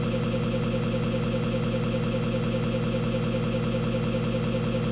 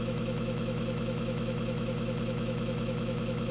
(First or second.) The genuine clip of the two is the first